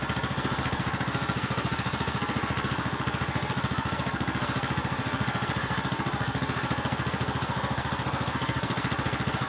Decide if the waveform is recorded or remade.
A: remade